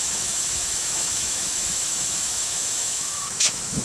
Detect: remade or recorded remade